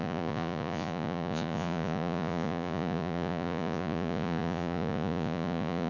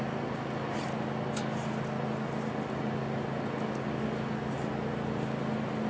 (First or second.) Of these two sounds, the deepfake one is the first